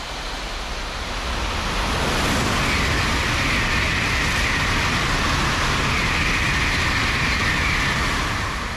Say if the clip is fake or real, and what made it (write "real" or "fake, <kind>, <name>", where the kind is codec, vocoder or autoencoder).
real